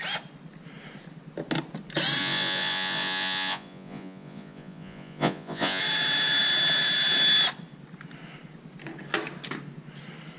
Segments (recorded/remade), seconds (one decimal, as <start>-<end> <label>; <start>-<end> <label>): 0.0-2.2 recorded; 2.2-5.8 remade; 5.8-10.4 recorded